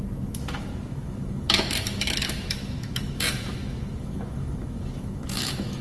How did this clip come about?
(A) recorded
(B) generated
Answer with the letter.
B